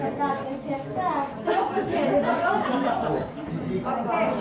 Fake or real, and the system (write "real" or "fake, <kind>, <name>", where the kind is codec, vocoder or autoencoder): real